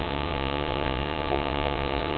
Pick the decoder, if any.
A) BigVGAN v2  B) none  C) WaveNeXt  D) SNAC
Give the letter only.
C